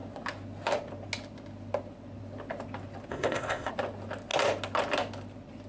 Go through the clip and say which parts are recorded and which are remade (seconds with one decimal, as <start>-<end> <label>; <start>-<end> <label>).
0.0-3.1 recorded; 3.1-3.7 remade; 3.7-5.7 recorded